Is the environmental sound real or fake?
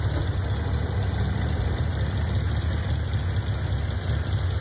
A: real